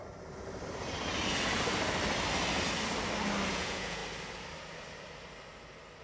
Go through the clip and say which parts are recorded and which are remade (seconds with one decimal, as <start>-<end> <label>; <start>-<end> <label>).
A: 0.0-3.5 recorded; 3.5-4.0 remade; 4.0-6.0 recorded

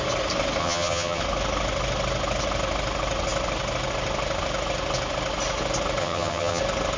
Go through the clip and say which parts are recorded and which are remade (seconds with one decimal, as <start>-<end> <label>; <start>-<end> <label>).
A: 0.0-0.6 recorded; 0.6-1.2 remade; 1.2-6.0 recorded; 6.0-6.6 remade; 6.6-7.0 recorded